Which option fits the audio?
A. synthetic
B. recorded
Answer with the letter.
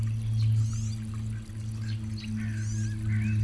B